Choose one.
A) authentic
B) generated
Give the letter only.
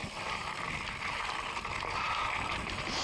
A